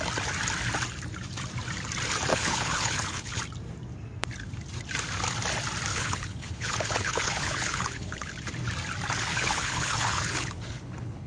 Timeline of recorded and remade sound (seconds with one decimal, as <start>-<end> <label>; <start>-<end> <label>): 0.0-2.3 recorded; 2.3-3.4 remade; 3.4-5.9 recorded; 5.9-8.3 remade; 8.3-9.3 recorded; 9.3-11.3 remade